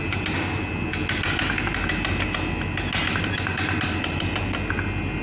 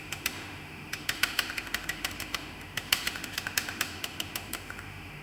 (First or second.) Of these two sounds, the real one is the first